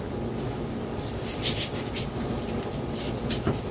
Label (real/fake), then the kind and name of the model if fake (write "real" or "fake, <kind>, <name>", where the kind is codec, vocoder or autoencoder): real